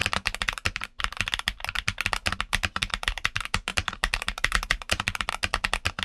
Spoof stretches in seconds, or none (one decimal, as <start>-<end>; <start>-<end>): 3.7-5.3